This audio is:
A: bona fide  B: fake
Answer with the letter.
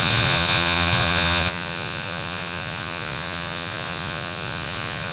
B